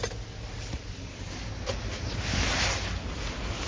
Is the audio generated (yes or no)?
no